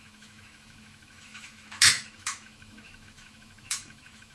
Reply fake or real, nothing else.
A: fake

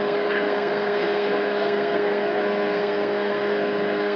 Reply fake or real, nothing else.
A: fake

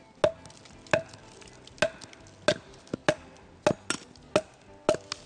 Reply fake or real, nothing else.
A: real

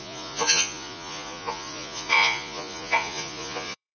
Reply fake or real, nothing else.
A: fake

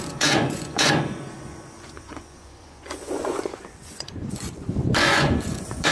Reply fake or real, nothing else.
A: fake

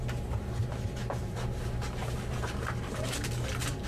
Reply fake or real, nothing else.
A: fake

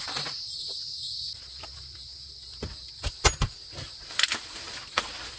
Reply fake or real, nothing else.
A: real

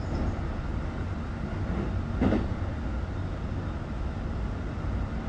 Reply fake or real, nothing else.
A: real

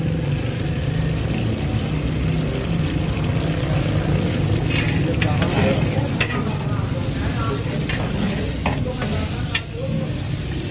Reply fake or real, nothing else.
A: real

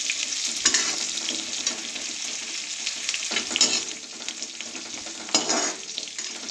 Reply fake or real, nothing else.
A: real